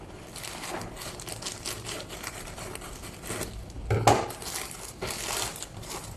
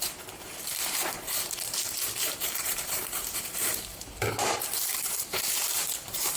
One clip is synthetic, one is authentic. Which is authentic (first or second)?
first